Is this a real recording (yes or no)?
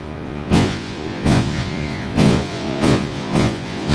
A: no